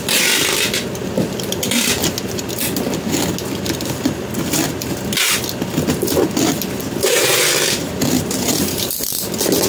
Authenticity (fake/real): real